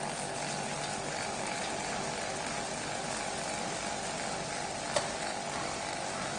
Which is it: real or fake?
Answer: real